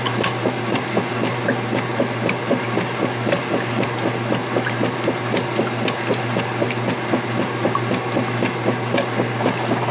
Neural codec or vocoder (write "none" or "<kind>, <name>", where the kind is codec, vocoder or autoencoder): none